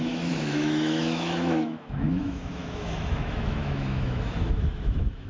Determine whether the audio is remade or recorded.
remade